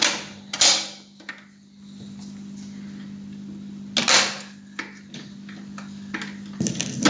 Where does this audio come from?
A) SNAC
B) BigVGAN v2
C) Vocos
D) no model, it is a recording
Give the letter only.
D